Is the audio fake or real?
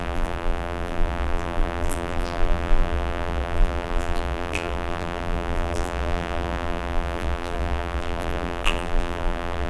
fake